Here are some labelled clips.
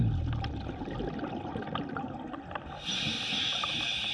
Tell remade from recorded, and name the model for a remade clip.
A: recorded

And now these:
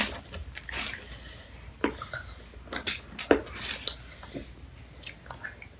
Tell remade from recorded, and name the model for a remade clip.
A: recorded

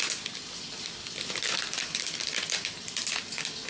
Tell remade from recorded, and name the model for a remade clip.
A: recorded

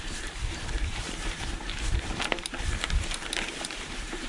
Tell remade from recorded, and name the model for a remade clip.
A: remade, vocoder, BigVGAN v2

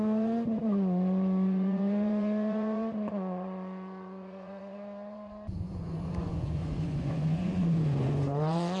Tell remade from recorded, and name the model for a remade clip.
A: remade, vocoder, Vocos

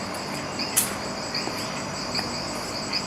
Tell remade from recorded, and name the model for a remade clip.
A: remade, vocoder, BigVGAN v2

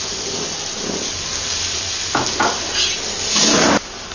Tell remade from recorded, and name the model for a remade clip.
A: recorded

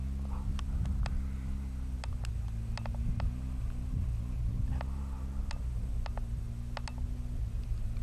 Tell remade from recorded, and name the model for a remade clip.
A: recorded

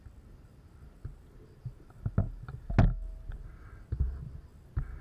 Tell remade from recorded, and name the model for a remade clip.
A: recorded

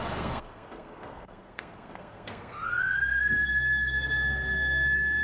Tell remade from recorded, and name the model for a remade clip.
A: remade, codec, SNAC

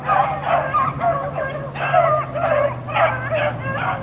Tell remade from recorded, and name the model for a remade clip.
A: recorded